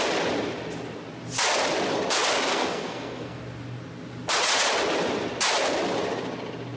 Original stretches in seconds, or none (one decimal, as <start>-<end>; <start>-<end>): 0.0-2.5; 3.4-6.8